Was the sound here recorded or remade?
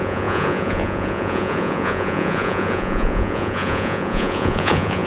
remade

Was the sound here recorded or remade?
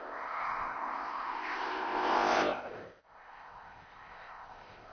remade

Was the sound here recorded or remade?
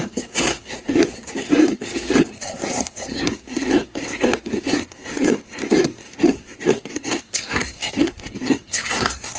remade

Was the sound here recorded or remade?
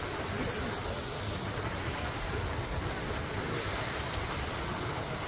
remade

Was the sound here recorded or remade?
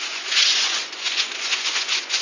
remade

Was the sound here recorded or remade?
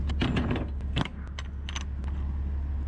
recorded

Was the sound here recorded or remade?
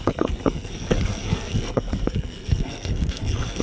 remade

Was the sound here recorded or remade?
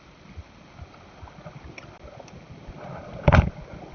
recorded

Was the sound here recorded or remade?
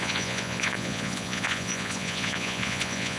remade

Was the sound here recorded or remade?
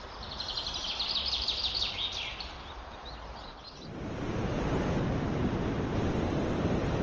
recorded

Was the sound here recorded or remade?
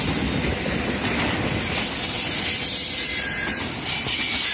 recorded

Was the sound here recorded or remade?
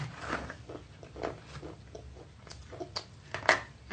recorded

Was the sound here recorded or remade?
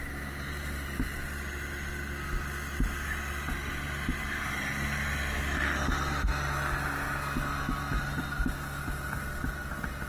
recorded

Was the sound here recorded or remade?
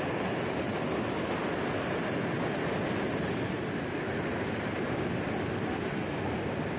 recorded